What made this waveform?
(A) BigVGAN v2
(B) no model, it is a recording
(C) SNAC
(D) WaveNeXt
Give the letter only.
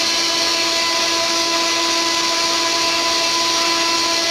B